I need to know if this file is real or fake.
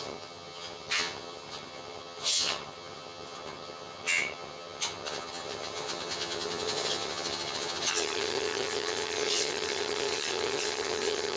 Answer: fake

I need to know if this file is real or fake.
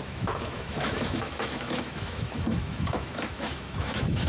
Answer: fake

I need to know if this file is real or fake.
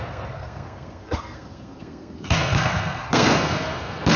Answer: fake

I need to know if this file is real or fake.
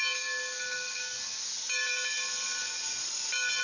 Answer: real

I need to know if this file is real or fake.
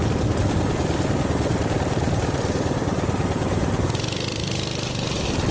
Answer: fake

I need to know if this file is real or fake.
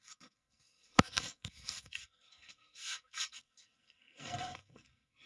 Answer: fake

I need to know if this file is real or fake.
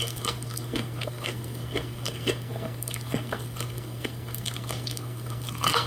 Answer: fake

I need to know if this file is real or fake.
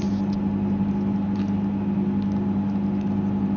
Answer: real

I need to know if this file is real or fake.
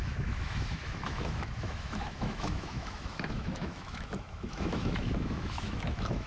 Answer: fake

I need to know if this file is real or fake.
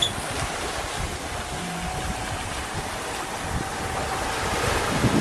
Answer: real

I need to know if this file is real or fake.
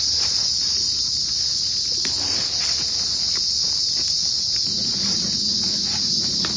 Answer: real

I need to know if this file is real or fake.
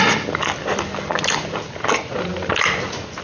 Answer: real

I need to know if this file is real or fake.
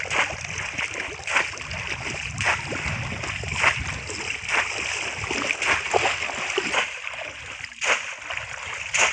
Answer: real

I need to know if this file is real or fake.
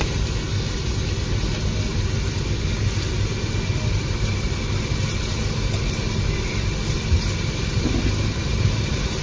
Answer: real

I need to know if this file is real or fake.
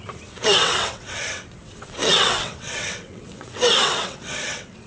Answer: fake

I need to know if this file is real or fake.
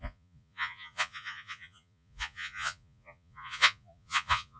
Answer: fake